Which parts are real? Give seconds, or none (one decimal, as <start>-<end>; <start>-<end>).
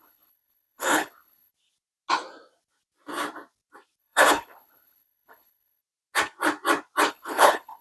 1.5-4.0; 5.8-7.1